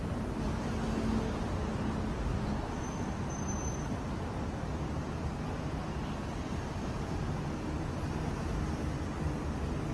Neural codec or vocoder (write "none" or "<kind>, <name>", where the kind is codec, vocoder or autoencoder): none